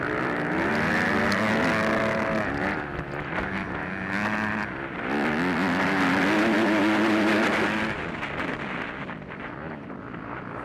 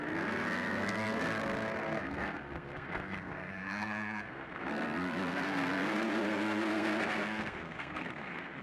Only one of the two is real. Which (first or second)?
first